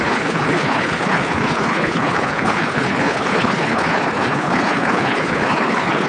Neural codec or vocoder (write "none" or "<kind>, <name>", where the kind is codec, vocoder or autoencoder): codec, HILCodec